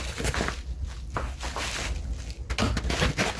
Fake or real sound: real